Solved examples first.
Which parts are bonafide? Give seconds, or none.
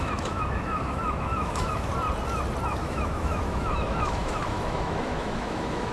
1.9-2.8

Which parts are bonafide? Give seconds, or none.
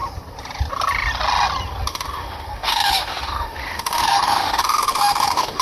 0.0-1.9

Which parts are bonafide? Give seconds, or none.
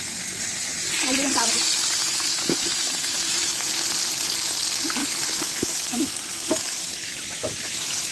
0.0-2.0; 3.7-5.0